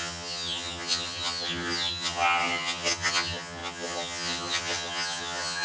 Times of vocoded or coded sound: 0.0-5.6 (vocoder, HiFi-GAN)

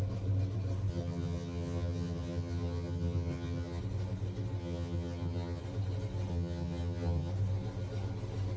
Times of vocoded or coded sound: 0.9-3.8 (vocoder, HiFi-GAN); 4.6-5.6; 6.3-7.3

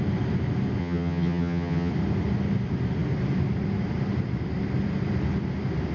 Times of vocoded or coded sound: 0.8-1.9 (vocoder, HiFi-GAN)

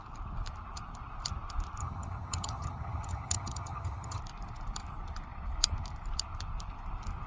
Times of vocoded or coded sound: 1.8-4.2 (vocoder, HiFi-GAN)

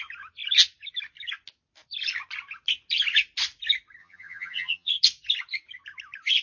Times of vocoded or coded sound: 4.0-4.9 (vocoder, HiFi-GAN)